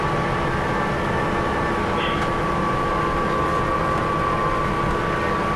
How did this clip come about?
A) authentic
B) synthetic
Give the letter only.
A